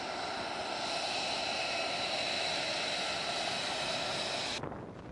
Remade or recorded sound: recorded